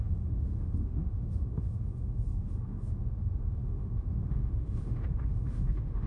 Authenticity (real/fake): fake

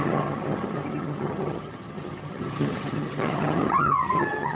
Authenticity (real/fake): fake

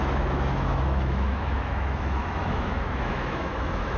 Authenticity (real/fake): fake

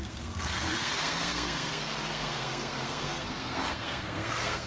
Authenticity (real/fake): fake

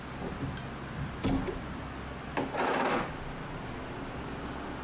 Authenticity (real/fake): real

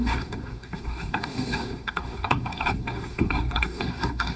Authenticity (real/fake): fake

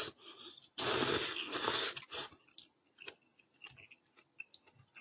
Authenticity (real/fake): real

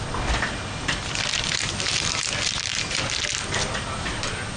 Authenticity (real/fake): real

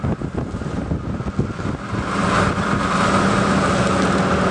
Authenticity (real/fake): real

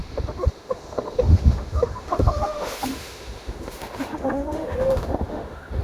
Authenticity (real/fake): fake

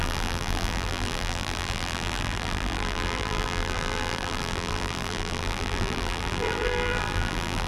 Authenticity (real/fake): fake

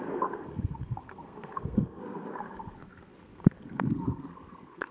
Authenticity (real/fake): fake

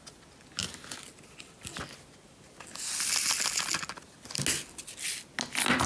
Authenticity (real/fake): real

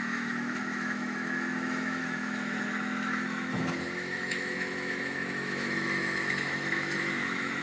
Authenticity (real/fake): fake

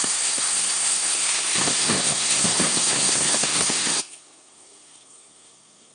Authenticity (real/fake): fake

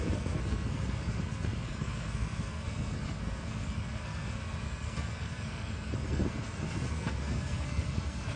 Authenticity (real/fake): fake